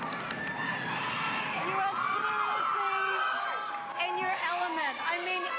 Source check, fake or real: real